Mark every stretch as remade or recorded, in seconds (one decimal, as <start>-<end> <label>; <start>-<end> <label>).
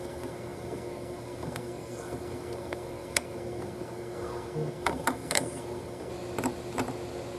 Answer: 0.0-6.1 remade; 6.1-7.4 recorded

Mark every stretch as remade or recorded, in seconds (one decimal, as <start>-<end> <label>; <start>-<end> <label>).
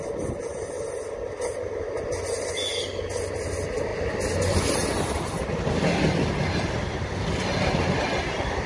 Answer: 0.0-8.7 recorded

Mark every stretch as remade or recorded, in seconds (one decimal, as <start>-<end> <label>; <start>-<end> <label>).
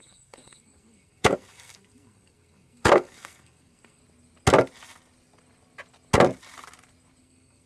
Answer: 0.0-4.0 remade; 4.0-7.2 recorded; 7.2-7.7 remade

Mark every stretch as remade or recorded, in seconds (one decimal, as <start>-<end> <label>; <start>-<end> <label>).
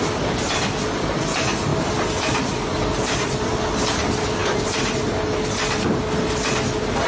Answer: 0.0-7.1 recorded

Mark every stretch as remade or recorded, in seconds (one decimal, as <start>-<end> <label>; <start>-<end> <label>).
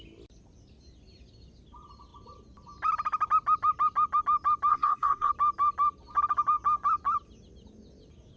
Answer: 0.0-4.7 recorded; 4.7-5.3 remade; 5.3-8.4 recorded